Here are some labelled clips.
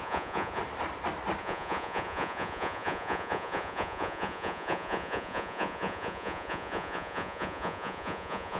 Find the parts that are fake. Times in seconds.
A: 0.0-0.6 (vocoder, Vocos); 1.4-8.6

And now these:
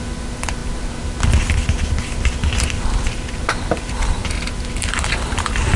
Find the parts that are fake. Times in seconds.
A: none

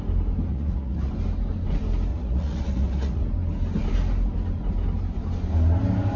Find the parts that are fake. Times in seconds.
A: 0.5-1.1 (vocoder, Vocos); 2.1-3.2

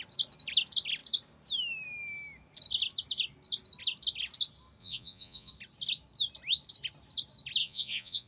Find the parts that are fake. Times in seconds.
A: 4.8-5.5 (vocoder, Vocos); 7.6-8.3